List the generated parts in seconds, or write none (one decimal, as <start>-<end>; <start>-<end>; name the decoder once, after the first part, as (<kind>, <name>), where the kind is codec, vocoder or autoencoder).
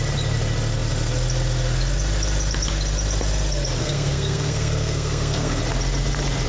3.8-5.6 (codec, SNAC)